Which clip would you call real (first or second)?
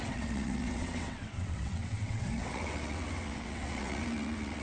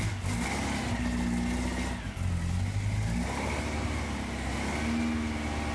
second